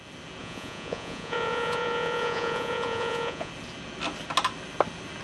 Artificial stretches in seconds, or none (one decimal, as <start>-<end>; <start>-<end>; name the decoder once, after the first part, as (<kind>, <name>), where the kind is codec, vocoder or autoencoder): 0.4-3.5 (vocoder, Vocos)